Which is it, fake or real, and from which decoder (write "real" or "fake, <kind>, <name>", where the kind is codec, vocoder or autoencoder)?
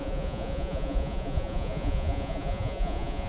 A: fake, vocoder, Vocos